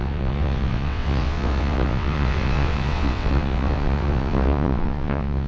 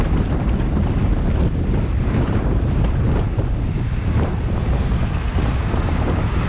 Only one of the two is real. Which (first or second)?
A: second